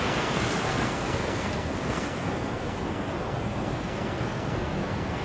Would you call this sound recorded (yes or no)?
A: no